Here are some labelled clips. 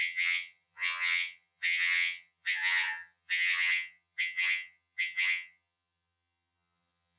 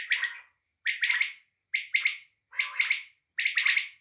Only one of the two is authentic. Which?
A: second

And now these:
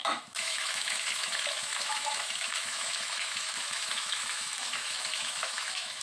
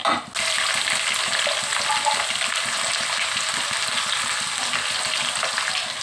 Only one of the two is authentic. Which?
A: second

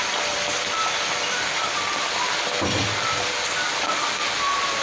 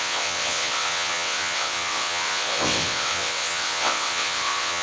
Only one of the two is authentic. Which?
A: first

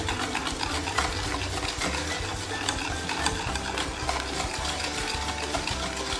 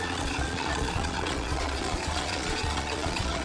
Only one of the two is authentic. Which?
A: first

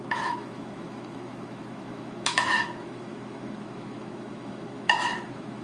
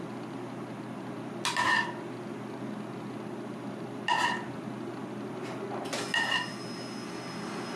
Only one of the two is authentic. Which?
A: second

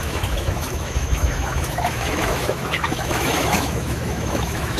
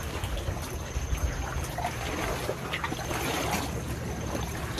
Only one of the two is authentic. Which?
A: second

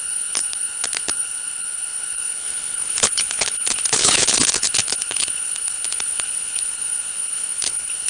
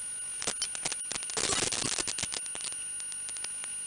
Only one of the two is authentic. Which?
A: second